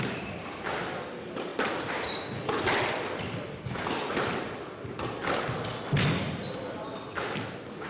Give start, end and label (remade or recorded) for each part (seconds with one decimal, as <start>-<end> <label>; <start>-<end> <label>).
0.0-1.5 recorded; 1.5-3.6 remade; 3.6-7.9 recorded